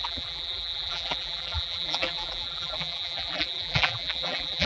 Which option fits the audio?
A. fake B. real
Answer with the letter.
A